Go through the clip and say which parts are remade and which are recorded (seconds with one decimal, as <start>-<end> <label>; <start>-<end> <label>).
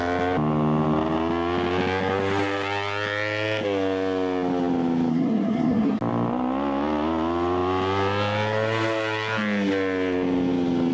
0.0-5.1 recorded; 5.1-6.0 remade; 6.0-10.9 recorded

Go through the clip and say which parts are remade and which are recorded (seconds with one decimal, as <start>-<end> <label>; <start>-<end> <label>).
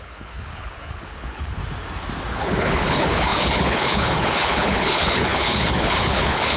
0.0-1.6 remade; 1.6-2.3 recorded; 2.3-6.6 remade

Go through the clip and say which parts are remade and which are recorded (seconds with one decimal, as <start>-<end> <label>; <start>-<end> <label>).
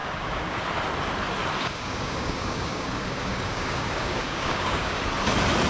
0.0-0.6 remade; 0.6-1.6 recorded; 1.6-5.0 remade; 5.0-5.7 recorded